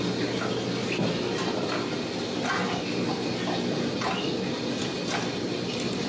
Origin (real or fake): real